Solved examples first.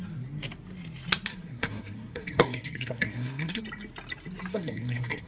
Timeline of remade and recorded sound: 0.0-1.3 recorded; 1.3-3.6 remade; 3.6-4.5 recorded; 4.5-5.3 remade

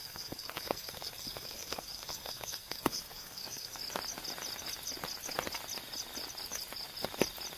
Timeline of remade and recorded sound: 0.0-3.8 remade; 3.8-7.6 recorded

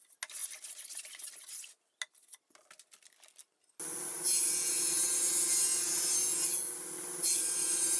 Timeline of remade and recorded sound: 0.0-8.0 recorded

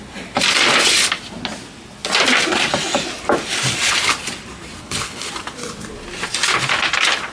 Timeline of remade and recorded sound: 0.0-4.8 recorded; 4.8-5.3 remade; 5.3-7.3 recorded